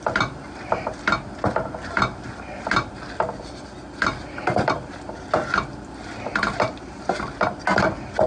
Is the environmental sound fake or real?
real